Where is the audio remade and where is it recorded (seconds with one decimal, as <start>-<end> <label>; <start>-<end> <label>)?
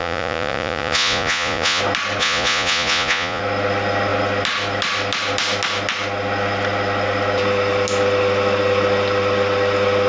0.0-1.8 remade; 1.8-2.2 recorded; 2.2-3.4 remade; 3.4-10.1 recorded